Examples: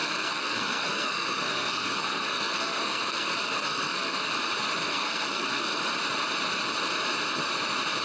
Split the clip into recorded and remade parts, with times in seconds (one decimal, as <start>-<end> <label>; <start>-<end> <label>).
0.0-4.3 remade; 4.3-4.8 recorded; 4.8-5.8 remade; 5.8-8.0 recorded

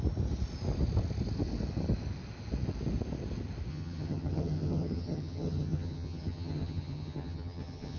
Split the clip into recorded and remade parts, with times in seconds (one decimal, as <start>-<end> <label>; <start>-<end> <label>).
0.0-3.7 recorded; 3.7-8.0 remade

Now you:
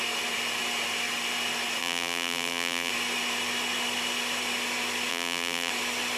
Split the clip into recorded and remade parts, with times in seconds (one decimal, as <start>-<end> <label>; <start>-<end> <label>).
0.0-1.8 recorded; 1.8-2.9 remade; 2.9-5.1 recorded; 5.1-5.7 remade; 5.7-6.2 recorded

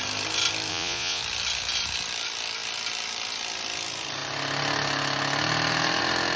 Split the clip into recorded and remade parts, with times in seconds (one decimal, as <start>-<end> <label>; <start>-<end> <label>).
0.0-0.7 recorded; 0.7-1.2 remade; 1.2-6.4 recorded

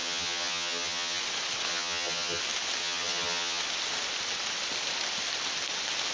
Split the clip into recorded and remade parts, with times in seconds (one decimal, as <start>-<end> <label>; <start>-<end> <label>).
0.0-1.2 remade; 1.2-1.7 recorded; 1.7-2.4 remade; 2.4-2.8 recorded; 2.8-3.6 remade; 3.6-6.1 recorded